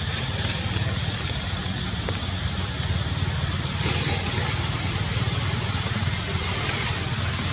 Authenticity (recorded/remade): remade